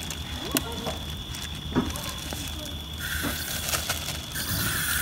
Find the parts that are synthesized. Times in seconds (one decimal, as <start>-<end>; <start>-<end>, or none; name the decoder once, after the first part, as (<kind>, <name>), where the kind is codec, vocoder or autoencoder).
none